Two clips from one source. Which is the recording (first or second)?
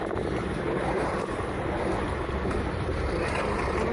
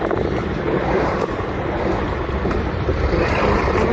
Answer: first